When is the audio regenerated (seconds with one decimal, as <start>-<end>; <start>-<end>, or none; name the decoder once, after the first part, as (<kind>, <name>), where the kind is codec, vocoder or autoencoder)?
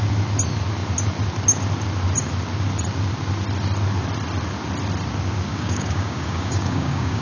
5.5-7.2 (codec, DAC)